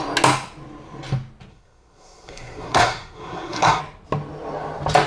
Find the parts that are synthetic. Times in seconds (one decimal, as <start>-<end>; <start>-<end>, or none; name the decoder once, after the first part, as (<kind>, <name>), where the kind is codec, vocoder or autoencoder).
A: 1.5-3.8 (codec, SNAC)